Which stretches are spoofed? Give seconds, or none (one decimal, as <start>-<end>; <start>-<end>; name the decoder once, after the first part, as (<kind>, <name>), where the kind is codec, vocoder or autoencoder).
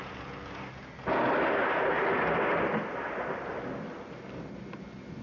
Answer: none